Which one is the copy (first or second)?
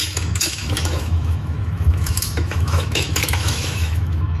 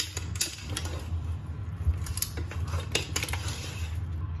first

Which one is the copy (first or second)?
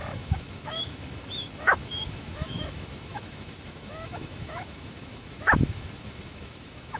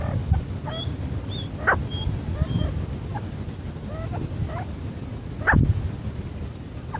first